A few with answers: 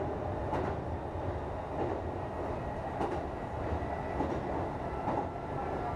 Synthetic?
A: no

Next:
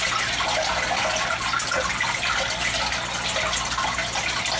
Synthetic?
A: no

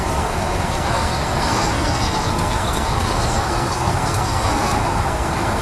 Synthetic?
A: yes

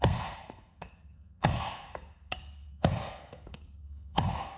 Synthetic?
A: yes